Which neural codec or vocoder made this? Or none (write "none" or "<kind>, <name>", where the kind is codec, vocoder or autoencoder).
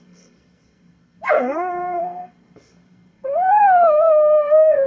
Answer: codec, SNAC